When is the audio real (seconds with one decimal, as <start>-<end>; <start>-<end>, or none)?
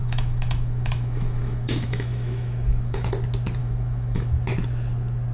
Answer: 3.1-3.6; 4.3-5.3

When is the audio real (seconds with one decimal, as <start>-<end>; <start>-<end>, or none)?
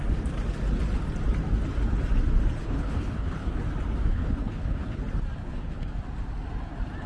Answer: 0.0-2.6; 3.6-4.1; 5.0-5.4; 5.9-7.1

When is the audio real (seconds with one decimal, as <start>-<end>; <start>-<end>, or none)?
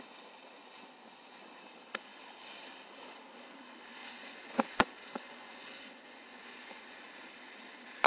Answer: 0.0-0.6; 1.4-4.0; 7.0-8.1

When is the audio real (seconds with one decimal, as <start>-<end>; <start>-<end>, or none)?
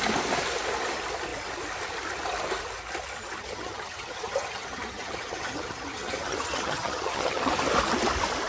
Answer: 0.0-3.4; 7.5-8.5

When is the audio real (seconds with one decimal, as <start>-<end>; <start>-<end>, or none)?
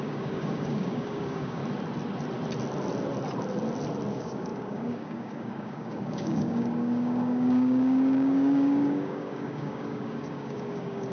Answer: 1.6-4.1